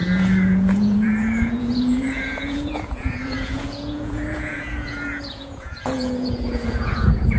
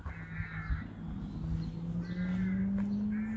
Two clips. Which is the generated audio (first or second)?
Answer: first